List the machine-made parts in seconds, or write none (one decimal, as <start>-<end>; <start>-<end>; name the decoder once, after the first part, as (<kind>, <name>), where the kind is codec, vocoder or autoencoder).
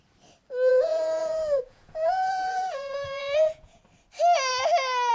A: 0.7-3.8 (vocoder, Vocos)